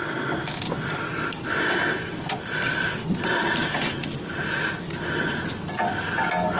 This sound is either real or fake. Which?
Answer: real